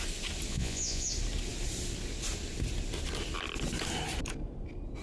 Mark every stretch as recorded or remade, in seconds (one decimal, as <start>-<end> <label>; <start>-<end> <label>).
0.0-0.5 recorded; 0.5-1.1 remade; 1.1-5.0 recorded